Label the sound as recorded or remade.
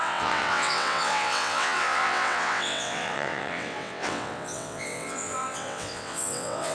remade